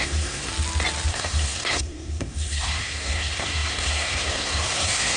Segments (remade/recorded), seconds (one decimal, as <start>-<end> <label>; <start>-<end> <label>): 0.0-0.5 remade; 0.5-1.1 recorded; 1.1-5.2 remade